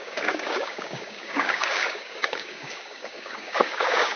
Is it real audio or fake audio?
fake